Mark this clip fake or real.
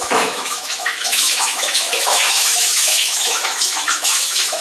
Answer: fake